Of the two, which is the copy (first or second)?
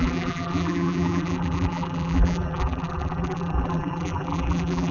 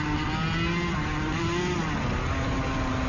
first